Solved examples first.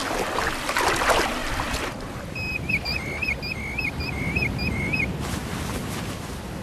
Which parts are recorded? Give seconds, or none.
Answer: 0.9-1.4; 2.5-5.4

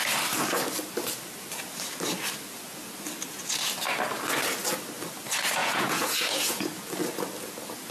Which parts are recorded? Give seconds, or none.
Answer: 0.0-5.6; 6.9-7.9

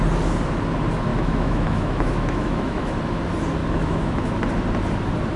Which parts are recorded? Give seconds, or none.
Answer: 0.0-1.1; 3.0-3.6; 4.4-5.4

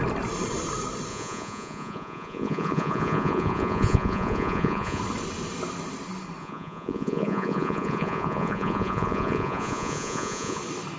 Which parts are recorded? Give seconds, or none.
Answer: 0.0-1.1; 5.0-6.4; 10.6-11.0

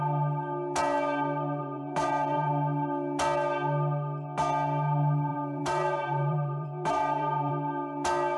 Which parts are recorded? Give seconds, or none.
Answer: 0.0-1.6; 2.5-5.3; 7.5-8.4